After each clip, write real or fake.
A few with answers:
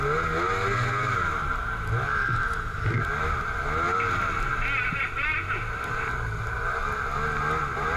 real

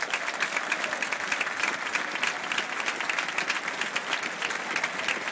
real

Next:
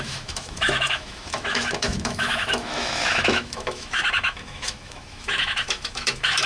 fake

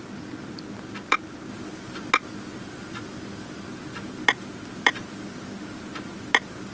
real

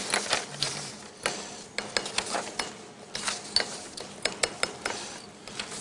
real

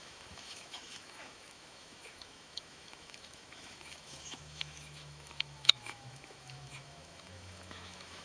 fake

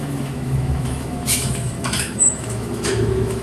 fake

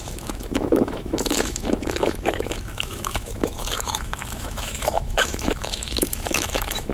fake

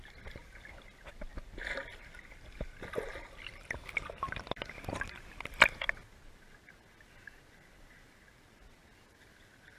real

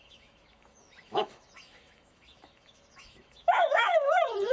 fake